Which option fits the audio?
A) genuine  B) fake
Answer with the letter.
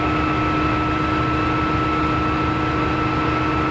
A